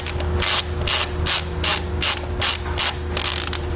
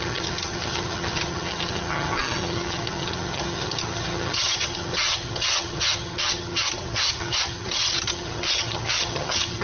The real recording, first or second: first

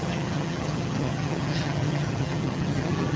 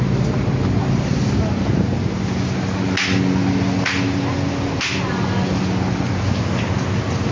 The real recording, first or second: second